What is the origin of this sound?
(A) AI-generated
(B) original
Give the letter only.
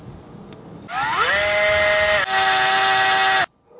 B